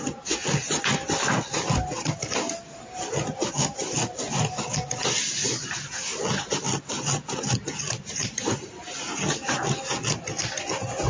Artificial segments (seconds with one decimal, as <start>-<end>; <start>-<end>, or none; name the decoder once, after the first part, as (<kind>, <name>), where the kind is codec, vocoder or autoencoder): none